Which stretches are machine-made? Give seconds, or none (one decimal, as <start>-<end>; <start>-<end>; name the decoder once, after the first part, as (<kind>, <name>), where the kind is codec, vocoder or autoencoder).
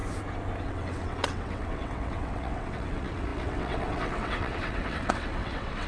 0.6-5.9 (vocoder, WaveNeXt)